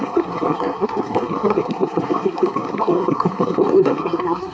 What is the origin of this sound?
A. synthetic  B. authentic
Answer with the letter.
A